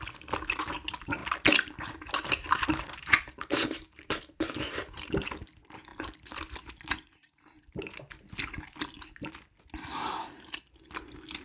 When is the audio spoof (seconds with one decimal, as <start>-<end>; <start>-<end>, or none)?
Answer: 1.2-5.1